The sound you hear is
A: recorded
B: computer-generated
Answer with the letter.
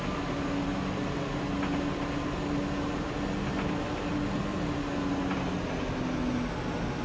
A